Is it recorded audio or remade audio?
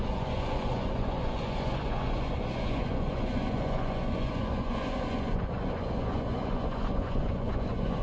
remade